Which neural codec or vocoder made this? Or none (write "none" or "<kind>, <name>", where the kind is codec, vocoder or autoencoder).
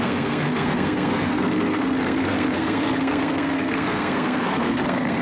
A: codec, SNAC